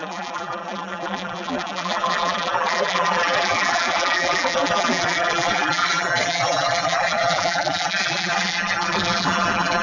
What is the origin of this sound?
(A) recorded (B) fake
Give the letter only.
B